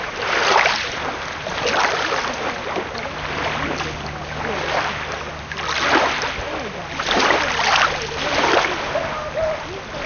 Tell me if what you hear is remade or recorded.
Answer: recorded